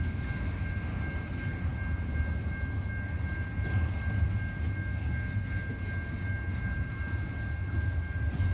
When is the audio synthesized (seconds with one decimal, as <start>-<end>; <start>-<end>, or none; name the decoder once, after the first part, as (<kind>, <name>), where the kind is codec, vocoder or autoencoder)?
none